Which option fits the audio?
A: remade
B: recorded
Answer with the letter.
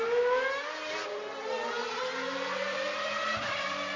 B